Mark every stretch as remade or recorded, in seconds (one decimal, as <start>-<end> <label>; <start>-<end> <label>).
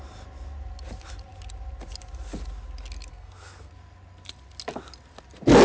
0.0-3.1 recorded; 3.1-3.7 remade; 3.7-5.6 recorded